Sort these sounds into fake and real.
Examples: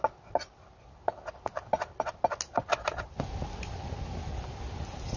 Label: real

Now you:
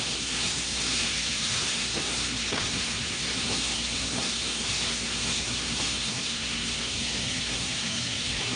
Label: fake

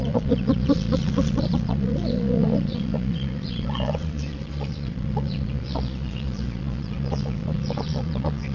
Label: fake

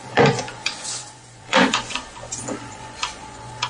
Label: fake